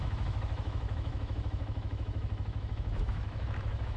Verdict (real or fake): fake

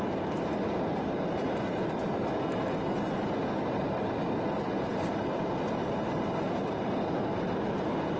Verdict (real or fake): real